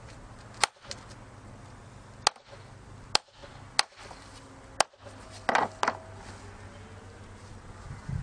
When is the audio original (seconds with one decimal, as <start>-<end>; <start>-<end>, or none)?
0.0-8.2